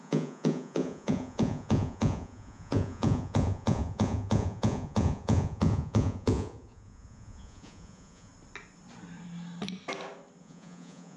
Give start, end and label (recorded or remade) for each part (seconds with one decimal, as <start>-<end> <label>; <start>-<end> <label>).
0.0-8.3 remade; 8.3-10.4 recorded; 10.4-11.2 remade